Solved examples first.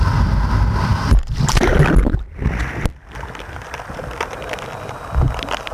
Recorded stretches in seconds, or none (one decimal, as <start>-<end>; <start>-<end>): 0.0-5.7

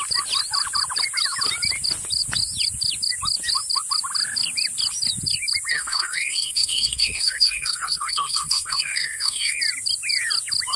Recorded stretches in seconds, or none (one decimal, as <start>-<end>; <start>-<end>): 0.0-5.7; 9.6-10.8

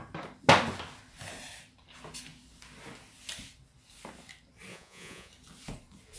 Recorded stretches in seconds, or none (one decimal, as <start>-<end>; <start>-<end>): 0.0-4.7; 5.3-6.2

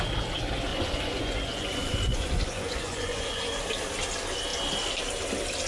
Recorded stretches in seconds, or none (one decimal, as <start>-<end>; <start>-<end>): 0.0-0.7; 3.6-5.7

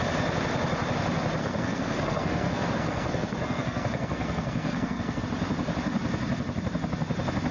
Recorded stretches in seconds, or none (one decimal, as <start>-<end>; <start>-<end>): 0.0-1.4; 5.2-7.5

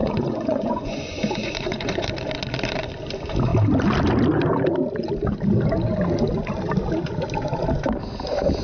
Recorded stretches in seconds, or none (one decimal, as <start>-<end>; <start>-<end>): 2.1-8.6